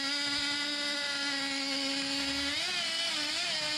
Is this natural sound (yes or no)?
yes